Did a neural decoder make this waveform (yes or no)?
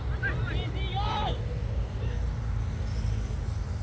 no